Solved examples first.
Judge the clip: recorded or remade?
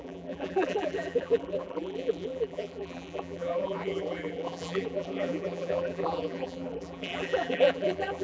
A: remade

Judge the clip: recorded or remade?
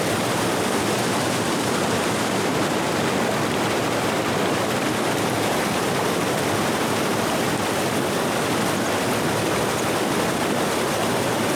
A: recorded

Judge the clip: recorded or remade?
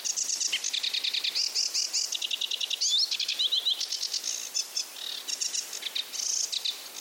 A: recorded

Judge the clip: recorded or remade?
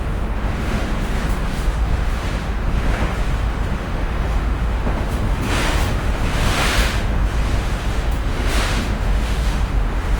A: remade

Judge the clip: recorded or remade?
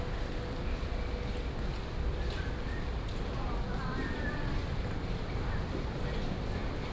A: recorded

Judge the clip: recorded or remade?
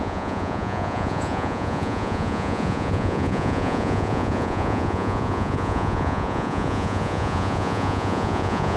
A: remade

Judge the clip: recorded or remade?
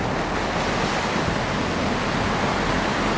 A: recorded